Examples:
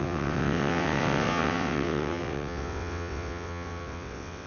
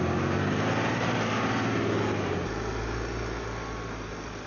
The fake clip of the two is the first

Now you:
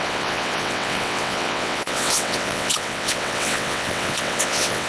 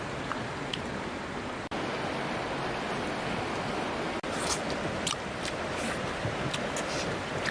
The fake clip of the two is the first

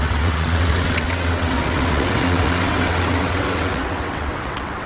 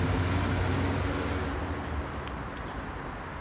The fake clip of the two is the first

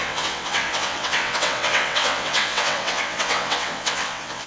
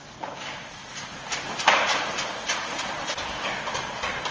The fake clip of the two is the first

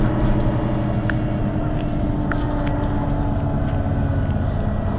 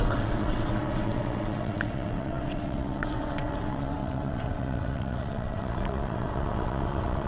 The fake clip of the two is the second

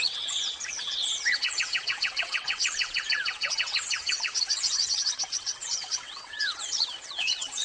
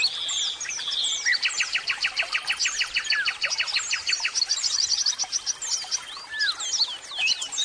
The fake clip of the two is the first